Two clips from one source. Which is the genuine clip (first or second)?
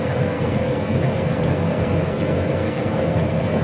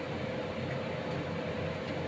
second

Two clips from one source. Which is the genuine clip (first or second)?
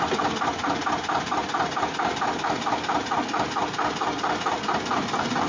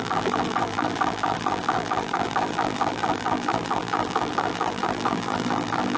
first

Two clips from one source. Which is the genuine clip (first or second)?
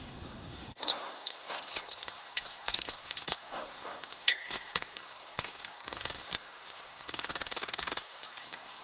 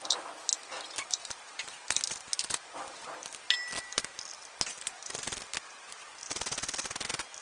second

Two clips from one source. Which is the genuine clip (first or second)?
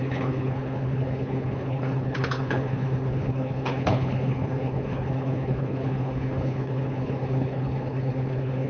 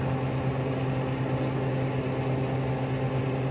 second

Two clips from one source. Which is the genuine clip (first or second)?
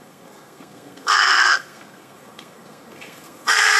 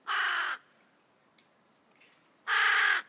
second